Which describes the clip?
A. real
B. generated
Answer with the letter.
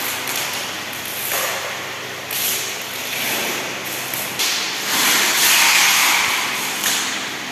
A